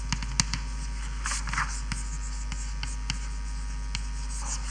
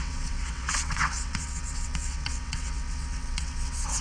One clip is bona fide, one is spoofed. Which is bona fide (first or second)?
first